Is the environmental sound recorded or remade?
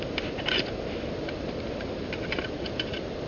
recorded